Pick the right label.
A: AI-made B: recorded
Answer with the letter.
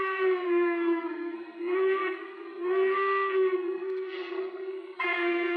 A